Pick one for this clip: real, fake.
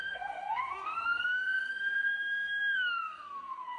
fake